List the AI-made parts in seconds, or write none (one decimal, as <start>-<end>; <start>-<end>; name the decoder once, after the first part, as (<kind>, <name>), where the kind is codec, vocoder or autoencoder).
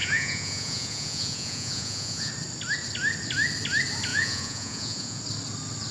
0.0-2.3 (vocoder, Vocos); 4.1-5.2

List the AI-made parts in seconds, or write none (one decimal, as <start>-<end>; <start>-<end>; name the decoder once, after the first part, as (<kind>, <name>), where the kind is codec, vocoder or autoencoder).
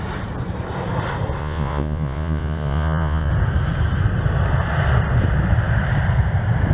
1.4-3.3 (vocoder, Vocos)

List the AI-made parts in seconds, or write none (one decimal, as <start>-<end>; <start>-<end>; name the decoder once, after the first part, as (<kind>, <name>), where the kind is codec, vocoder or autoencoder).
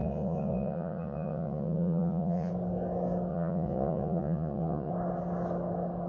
0.0-2.5 (vocoder, Vocos); 3.3-4.9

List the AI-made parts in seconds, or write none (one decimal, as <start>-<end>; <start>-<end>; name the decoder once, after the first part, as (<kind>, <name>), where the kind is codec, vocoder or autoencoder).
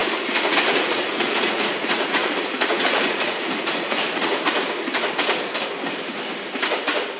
0.0-4.3 (vocoder, Vocos)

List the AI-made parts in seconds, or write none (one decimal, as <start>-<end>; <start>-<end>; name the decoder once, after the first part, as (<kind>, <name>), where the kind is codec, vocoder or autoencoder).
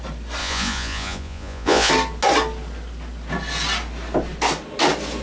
0.4-1.9 (vocoder, Vocos)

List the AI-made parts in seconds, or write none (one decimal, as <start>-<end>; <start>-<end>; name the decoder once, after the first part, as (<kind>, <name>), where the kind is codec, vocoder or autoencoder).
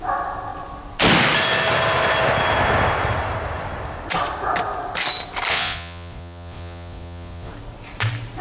5.5-7.5 (vocoder, Vocos)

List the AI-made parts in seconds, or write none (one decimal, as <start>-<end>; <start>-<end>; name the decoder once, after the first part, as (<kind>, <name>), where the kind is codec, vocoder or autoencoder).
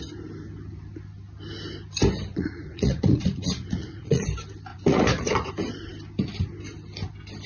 2.3-4.2 (vocoder, Vocos); 4.7-5.5